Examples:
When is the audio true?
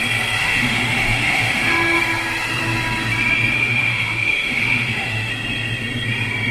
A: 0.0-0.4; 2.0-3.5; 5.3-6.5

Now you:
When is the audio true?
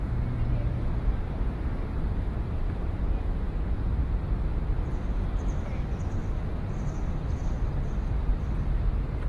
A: 4.0-4.9; 6.2-6.9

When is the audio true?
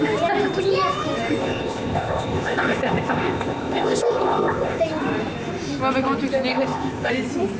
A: 0.0-1.4; 4.8-6.5; 7.1-7.6